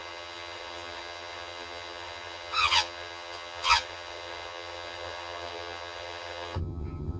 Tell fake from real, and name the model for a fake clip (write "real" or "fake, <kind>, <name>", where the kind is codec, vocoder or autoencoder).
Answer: fake, vocoder, HiFi-GAN